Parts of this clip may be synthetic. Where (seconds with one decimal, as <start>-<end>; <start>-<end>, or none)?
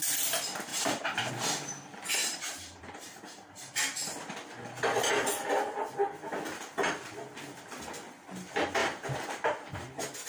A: 0.7-1.3; 2.2-3.7; 8.8-10.3